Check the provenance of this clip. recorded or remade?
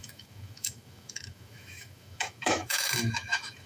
remade